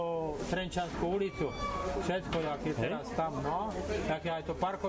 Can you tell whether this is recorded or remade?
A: recorded